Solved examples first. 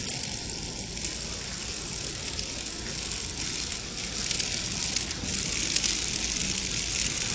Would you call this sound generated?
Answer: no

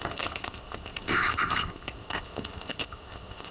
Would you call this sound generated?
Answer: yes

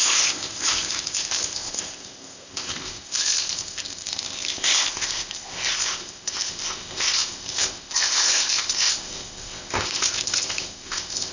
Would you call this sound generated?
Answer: yes